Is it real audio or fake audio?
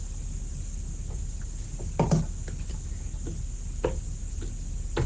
real